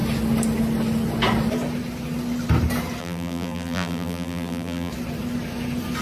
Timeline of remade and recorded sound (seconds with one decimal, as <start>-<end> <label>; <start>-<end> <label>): 0.0-3.0 recorded; 3.0-4.9 remade; 4.9-6.0 recorded